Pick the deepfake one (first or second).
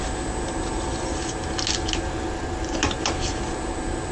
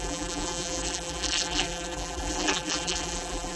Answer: second